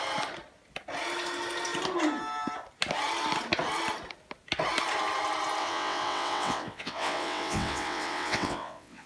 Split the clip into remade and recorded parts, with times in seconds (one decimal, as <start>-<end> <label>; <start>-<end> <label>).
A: 0.0-5.6 recorded; 5.6-9.1 remade